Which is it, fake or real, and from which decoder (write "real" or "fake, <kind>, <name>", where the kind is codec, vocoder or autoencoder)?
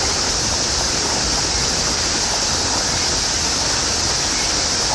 real